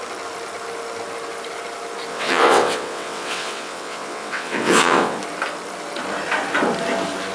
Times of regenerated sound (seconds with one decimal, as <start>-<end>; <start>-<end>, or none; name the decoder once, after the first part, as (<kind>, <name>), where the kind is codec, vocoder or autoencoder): 2.1-5.2 (vocoder, WaveNeXt)